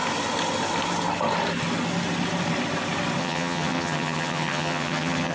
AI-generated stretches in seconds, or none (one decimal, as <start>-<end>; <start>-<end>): 3.2-5.3